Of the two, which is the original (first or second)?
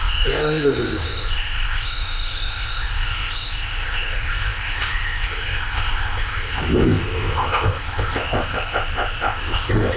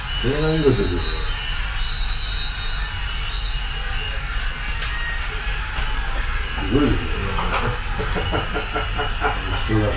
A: second